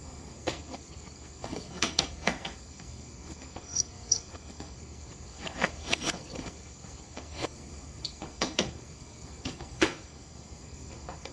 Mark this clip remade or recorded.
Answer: remade